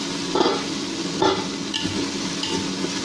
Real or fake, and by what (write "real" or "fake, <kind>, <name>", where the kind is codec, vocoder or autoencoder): real